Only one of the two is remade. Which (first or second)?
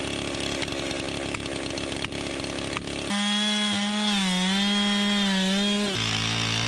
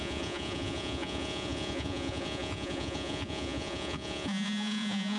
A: second